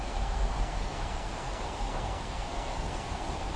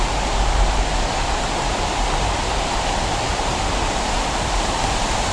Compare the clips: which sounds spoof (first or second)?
first